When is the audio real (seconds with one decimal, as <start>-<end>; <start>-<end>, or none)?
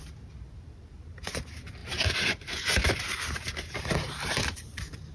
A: none